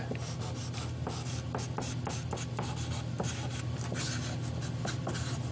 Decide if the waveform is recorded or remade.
recorded